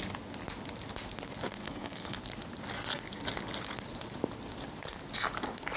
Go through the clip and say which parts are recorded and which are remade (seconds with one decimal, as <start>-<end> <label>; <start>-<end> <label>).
0.0-1.6 recorded; 1.6-2.2 remade; 2.2-5.8 recorded